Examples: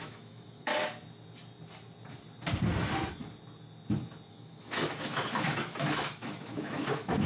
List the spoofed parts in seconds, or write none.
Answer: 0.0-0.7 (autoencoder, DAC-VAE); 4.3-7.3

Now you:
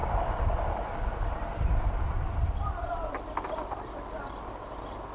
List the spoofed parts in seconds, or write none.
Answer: none

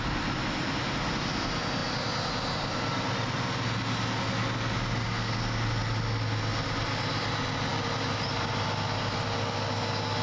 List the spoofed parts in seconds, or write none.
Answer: none

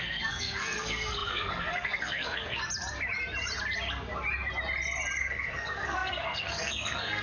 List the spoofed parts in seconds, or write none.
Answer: 0.0-2.6 (codec, SNAC); 5.2-7.2